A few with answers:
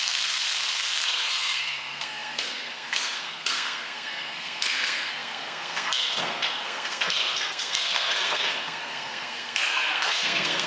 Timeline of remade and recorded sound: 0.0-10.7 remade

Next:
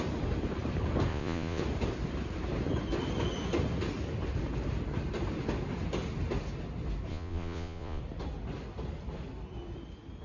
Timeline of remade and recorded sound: 0.0-1.1 recorded; 1.1-1.6 remade; 1.6-7.1 recorded; 7.1-8.0 remade; 8.0-10.2 recorded

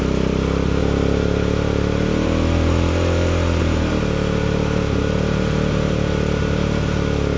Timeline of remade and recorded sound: 0.0-0.8 recorded; 0.8-5.0 remade; 5.0-7.4 recorded

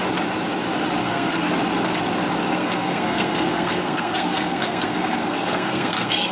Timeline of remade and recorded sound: 0.0-1.0 recorded; 1.0-1.5 remade; 1.5-2.5 recorded; 2.5-6.3 remade

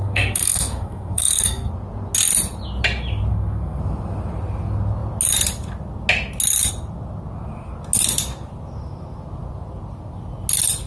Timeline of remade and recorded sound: 0.0-1.7 remade; 1.7-3.3 recorded; 3.3-3.8 remade; 3.8-10.9 recorded

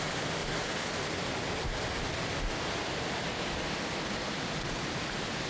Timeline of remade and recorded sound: 0.0-5.5 recorded

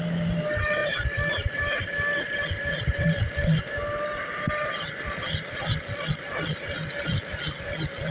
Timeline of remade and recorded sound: 0.0-8.1 recorded